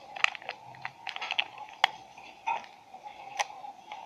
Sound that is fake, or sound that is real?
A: real